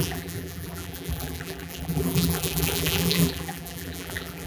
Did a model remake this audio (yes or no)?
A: yes